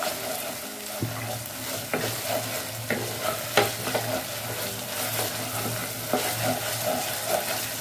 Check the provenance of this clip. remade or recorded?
recorded